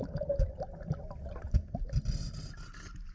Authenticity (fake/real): real